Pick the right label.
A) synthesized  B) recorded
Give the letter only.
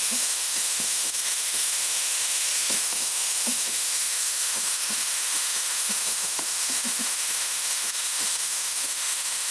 A